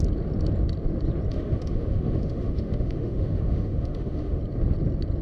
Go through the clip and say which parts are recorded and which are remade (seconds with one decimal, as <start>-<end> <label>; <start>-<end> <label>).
0.0-1.3 recorded; 1.3-4.4 remade; 4.4-5.2 recorded